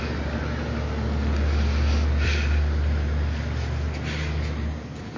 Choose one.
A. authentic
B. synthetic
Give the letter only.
A